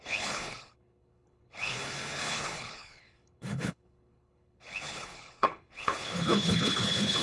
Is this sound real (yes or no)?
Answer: no